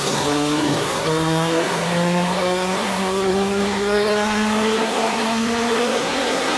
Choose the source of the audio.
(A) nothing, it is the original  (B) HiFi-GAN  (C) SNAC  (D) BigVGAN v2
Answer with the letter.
C